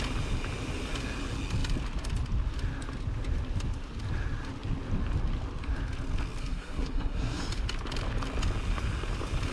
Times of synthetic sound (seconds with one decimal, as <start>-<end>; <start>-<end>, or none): 6.4-7.4